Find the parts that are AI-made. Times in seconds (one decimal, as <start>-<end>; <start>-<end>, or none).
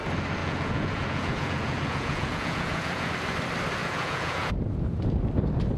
0.4-3.1; 3.8-4.5